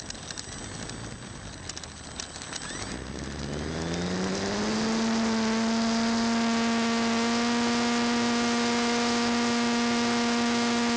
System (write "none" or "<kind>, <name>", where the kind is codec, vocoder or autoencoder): none